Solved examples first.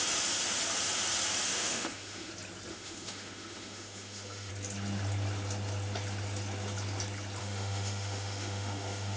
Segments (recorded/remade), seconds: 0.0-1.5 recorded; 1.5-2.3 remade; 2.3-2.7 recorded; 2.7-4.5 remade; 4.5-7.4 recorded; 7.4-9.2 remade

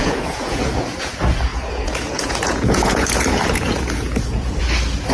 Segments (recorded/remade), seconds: 0.0-0.7 remade; 0.7-1.5 recorded; 1.5-4.6 remade; 4.6-5.1 recorded